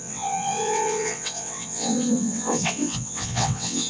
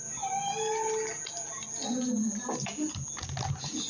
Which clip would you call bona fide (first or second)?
second